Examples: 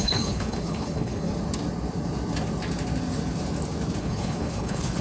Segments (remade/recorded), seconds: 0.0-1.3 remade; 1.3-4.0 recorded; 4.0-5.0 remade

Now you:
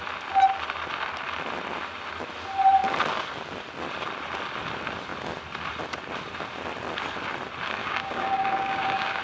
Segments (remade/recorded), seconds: 0.0-7.8 recorded; 7.8-9.2 remade

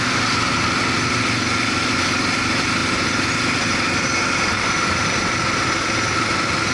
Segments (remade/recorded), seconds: 0.0-2.8 recorded; 2.8-5.7 remade; 5.7-6.7 recorded

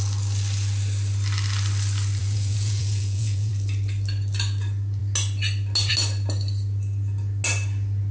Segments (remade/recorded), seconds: 0.0-2.2 recorded; 2.2-3.5 remade; 3.5-8.1 recorded

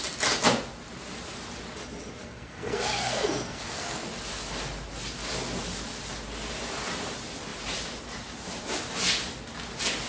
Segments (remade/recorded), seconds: 0.0-2.2 recorded; 2.2-4.1 remade; 4.1-10.1 recorded

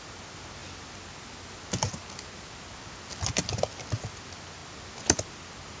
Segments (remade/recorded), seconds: 0.0-5.8 recorded